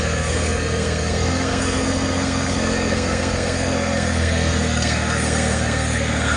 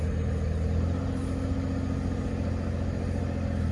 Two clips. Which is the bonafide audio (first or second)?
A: second